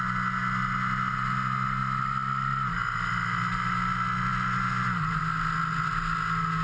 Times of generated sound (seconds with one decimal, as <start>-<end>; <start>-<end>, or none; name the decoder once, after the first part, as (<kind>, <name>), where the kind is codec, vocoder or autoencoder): none